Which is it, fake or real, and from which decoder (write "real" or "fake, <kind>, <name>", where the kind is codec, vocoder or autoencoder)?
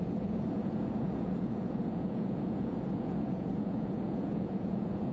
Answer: fake, vocoder, Vocos